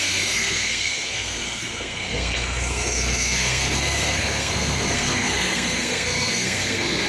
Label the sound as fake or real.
fake